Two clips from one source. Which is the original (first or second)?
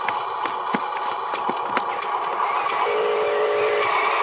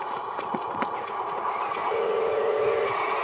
first